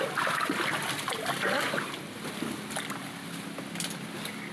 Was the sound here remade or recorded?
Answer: recorded